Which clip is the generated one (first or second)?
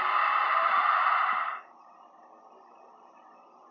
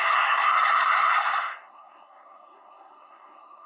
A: second